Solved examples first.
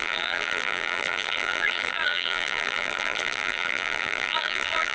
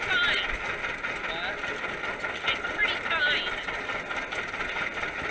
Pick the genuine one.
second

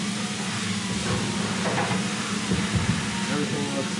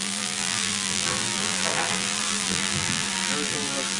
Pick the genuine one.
first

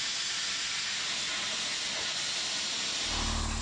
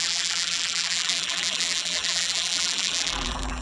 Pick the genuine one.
first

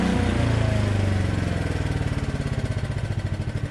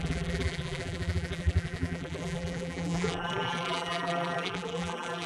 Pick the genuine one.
first